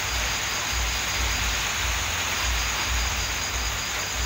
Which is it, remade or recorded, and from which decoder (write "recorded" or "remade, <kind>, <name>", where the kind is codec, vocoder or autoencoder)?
recorded